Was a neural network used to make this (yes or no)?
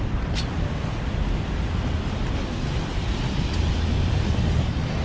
no